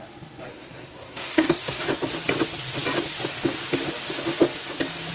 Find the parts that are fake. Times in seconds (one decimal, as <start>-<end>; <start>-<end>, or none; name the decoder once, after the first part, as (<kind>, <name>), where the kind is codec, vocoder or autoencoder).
0.5-1.8 (codec, SNAC)